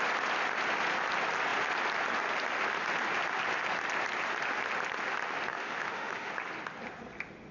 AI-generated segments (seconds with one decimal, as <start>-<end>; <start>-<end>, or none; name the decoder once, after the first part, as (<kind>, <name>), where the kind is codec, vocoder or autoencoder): 5.5-6.3 (autoencoder, DAC-VAE)

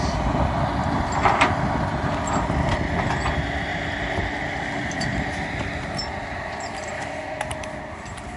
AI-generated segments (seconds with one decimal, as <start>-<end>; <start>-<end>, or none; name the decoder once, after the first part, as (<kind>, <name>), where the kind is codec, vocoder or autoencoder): 3.7-8.4 (vocoder, BigVGAN v2)

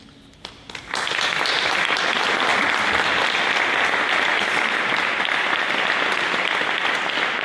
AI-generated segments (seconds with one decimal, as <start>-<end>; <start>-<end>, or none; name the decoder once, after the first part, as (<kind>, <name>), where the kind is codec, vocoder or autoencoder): none